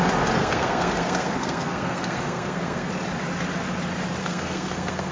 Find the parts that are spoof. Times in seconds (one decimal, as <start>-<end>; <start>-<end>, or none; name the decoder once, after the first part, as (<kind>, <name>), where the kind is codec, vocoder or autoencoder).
0.4-2.9 (codec, SNAC); 4.2-5.1